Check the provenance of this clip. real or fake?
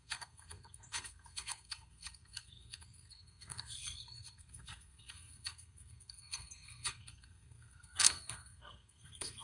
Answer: fake